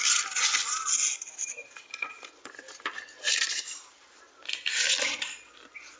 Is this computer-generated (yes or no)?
no